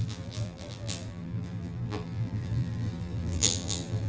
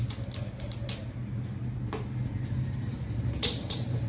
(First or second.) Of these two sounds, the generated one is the first